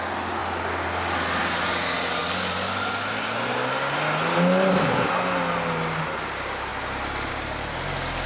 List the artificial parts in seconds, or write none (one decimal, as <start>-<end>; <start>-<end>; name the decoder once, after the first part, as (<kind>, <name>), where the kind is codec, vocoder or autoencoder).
none